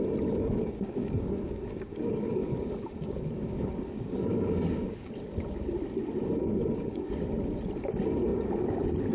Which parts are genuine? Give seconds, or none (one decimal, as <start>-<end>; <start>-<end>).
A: 0.0-0.4; 5.1-6.4; 7.1-9.1